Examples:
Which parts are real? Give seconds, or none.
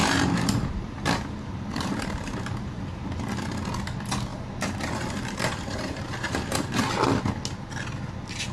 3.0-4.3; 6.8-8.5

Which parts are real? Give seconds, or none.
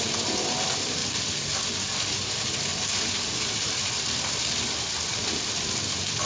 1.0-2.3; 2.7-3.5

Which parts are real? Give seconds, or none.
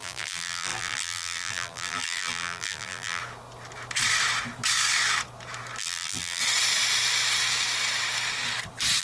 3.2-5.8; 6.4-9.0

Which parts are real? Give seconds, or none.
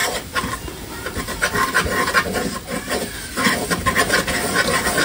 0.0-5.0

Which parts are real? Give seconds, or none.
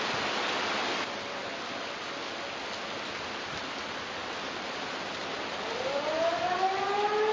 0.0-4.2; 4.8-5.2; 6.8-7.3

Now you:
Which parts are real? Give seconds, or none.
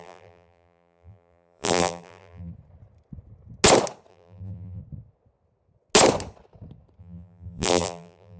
2.5-4.1; 4.8-7.0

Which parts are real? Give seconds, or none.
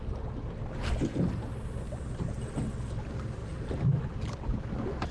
0.0-3.4; 4.6-5.1